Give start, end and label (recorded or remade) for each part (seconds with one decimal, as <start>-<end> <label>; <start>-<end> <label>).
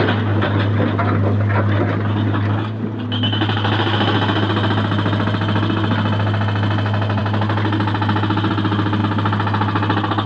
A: 0.0-10.3 recorded